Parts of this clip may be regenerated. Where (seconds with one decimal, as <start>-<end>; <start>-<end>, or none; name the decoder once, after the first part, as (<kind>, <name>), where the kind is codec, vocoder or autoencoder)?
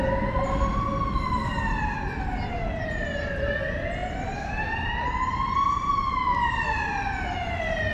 none